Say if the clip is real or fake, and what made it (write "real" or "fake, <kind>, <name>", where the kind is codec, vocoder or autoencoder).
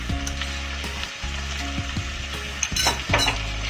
real